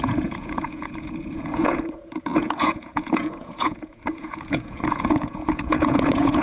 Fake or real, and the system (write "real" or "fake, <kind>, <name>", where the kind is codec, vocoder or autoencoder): fake, vocoder, Vocos